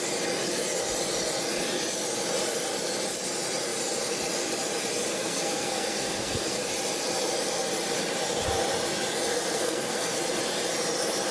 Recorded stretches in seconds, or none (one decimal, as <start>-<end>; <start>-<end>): 0.0-5.1; 6.7-9.3; 10.2-11.3

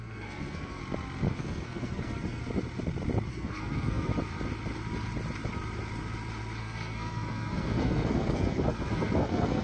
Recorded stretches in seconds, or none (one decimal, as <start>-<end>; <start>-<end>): 0.8-1.3; 2.4-3.3; 4.1-6.6

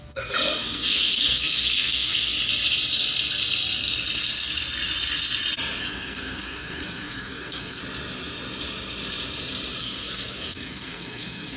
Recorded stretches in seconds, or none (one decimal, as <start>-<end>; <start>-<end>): 2.3-5.8; 7.8-9.8

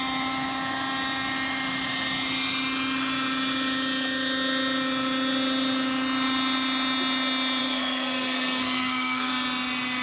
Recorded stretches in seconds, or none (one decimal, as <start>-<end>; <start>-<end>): 0.0-7.6; 9.3-10.0

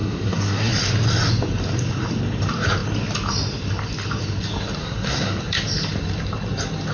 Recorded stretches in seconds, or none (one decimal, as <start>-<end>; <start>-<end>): 0.7-4.8; 5.4-6.9

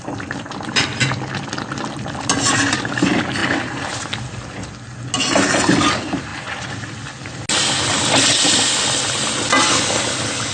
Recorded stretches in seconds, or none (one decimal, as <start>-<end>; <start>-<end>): 0.0-10.5

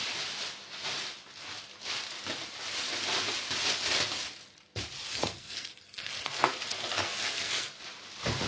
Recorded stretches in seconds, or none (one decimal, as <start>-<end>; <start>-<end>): 0.0-5.1; 7.8-8.5

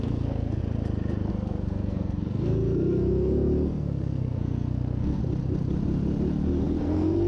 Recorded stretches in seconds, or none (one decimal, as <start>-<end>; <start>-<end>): 0.6-1.3; 5.2-6.8